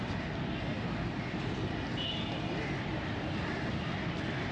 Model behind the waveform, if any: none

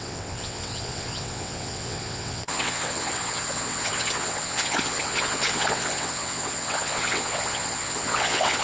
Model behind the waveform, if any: vocoder, WaveNeXt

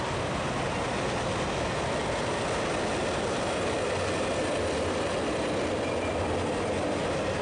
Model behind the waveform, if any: none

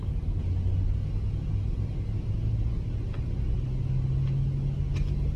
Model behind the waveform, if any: none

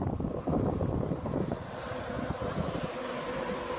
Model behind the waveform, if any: none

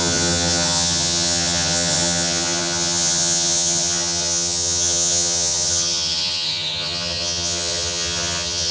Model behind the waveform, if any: vocoder, HiFi-GAN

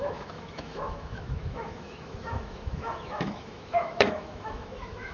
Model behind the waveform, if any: autoencoder, DAC-VAE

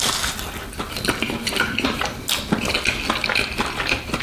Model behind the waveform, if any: none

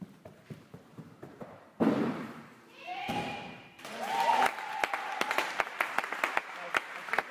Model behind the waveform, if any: vocoder, BigVGAN v2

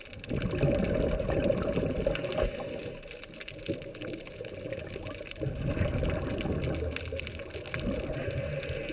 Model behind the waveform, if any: none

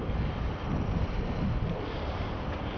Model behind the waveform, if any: none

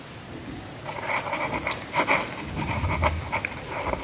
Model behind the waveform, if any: none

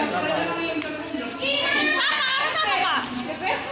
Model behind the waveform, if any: none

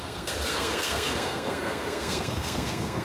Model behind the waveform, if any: codec, SNAC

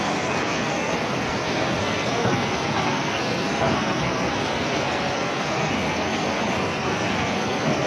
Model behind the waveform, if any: codec, SNAC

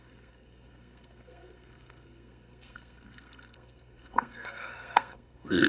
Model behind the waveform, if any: codec, SNAC